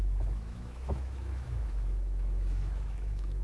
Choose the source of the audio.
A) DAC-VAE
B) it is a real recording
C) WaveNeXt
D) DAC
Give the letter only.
A